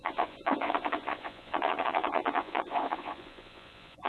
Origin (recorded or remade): remade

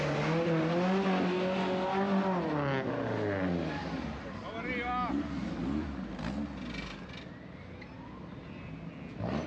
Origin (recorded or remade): recorded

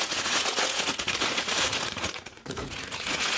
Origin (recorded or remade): remade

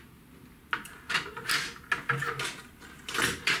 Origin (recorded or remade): recorded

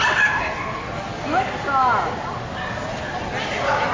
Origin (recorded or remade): recorded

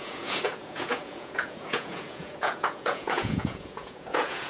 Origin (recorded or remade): remade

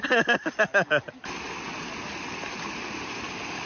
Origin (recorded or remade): recorded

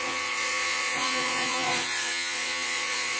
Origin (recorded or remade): remade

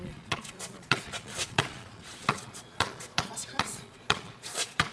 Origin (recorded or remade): remade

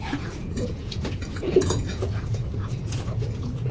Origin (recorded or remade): remade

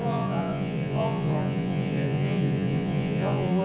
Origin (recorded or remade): remade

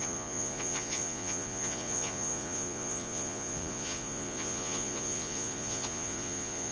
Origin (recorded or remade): remade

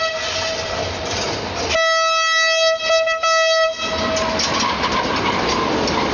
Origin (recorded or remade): recorded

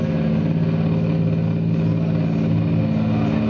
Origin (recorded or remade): recorded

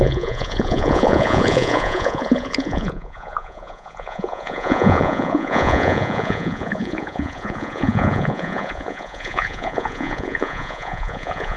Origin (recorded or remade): remade